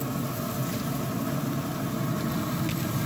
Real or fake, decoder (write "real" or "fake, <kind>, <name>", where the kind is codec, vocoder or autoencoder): real